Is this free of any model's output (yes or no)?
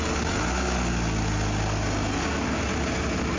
yes